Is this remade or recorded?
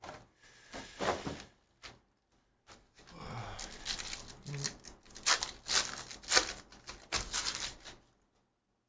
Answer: recorded